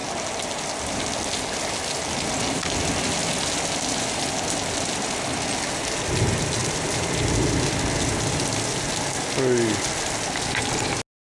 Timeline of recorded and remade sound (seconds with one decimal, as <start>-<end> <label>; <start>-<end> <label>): 0.0-11.4 recorded